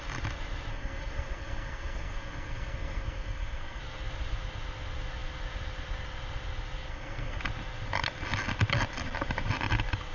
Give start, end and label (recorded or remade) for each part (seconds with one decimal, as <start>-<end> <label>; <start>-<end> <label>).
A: 0.0-0.7 recorded; 0.7-3.8 remade; 3.8-6.9 recorded; 6.9-7.4 remade; 7.4-10.1 recorded

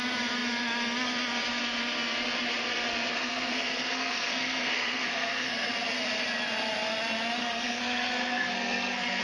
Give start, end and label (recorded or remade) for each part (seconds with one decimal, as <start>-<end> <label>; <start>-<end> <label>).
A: 0.0-3.1 recorded; 3.1-5.7 remade; 5.7-7.4 recorded; 7.4-9.2 remade